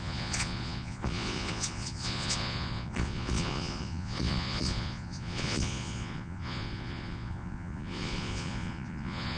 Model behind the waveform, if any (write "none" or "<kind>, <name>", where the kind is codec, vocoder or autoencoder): vocoder, Vocos